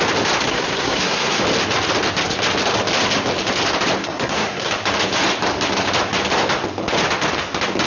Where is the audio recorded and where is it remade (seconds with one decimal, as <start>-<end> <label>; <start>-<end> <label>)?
0.0-0.5 recorded; 0.5-1.4 remade; 1.4-4.0 recorded; 4.0-4.7 remade; 4.7-7.9 recorded

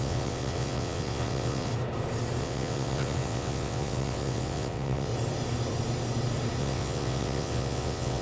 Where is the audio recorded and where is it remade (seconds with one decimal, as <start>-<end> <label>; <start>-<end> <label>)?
0.0-1.7 remade; 1.7-2.4 recorded; 2.4-5.1 remade; 5.1-6.6 recorded; 6.6-8.2 remade

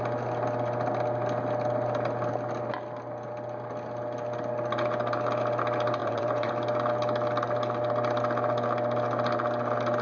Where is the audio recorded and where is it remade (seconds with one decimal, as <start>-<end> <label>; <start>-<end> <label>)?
0.0-6.0 recorded; 6.0-6.5 remade; 6.5-10.0 recorded

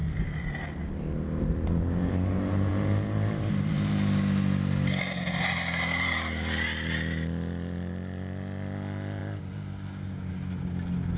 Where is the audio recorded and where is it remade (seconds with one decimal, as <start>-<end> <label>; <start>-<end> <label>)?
0.0-1.0 remade; 1.0-2.7 recorded; 2.7-3.5 remade; 3.5-11.2 recorded

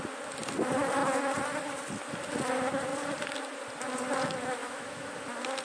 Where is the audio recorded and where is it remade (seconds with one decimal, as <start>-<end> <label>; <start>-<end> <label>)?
0.0-4.6 recorded; 4.6-5.1 remade; 5.1-5.6 recorded

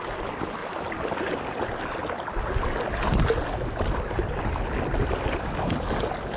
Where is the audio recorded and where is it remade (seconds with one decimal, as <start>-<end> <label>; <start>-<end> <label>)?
0.0-6.4 recorded

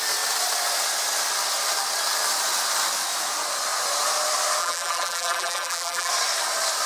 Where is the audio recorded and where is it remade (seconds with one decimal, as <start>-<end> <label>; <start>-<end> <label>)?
0.0-4.6 recorded; 4.6-6.1 remade; 6.1-6.9 recorded